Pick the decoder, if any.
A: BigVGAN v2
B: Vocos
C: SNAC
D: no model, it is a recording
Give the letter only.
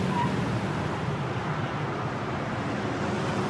D